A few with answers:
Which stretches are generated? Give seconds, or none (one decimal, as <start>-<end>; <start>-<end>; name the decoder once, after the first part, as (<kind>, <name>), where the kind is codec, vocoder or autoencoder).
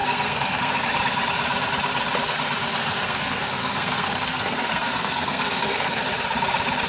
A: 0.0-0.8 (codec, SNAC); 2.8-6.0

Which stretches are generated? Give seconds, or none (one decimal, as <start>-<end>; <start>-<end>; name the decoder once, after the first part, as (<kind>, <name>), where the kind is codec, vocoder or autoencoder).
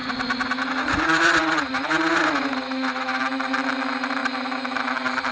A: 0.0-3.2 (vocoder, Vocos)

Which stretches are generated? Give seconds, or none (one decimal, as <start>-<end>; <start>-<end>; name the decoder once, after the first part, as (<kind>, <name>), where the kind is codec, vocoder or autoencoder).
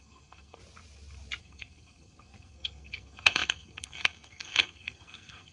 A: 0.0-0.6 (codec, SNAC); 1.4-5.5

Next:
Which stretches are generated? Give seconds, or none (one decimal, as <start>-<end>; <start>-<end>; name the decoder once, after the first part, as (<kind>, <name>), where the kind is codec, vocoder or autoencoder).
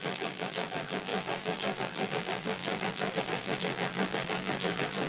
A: 0.0-5.1 (vocoder, BigVGAN v2)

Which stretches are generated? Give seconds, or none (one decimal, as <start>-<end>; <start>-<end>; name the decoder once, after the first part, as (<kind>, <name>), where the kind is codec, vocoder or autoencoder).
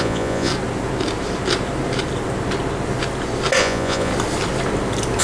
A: 0.0-0.5 (vocoder, Vocos); 3.6-4.1